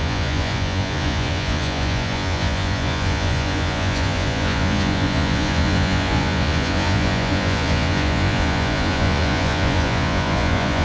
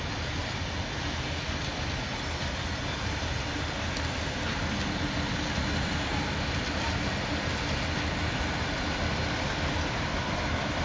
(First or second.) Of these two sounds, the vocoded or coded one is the first